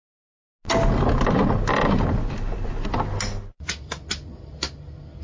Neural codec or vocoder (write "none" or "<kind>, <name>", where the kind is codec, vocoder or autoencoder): none